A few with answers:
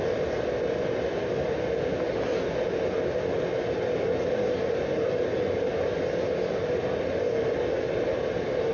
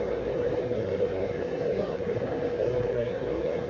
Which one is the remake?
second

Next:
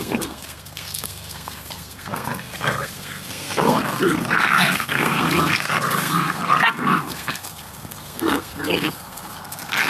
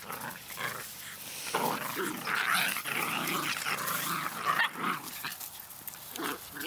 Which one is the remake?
first